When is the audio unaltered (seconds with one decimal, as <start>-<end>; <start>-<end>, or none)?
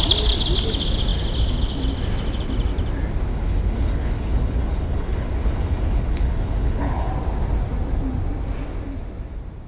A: 0.0-3.3; 7.1-9.7